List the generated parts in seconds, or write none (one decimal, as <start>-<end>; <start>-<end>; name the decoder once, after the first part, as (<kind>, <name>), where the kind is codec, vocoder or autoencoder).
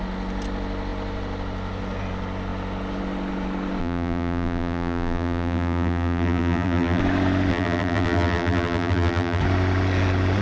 3.8-7.0 (vocoder, BigVGAN v2); 7.5-9.4